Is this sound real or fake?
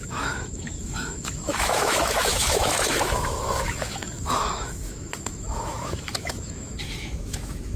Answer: fake